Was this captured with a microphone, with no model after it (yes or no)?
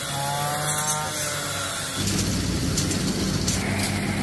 yes